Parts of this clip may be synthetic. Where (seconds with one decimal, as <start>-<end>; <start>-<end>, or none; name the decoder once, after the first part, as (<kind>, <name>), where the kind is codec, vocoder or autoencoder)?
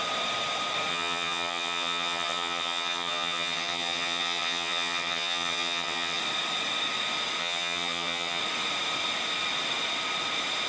0.9-6.2 (vocoder, HiFi-GAN); 7.4-8.4